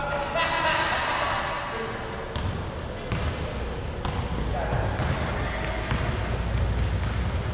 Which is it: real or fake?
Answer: real